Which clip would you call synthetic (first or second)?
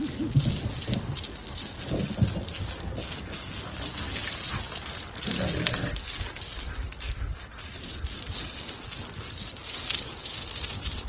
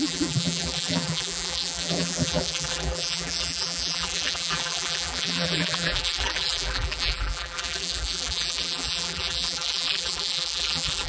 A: second